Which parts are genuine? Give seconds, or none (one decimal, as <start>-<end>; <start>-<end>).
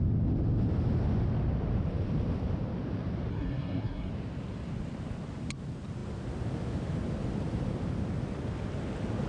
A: 0.0-3.3; 4.1-9.3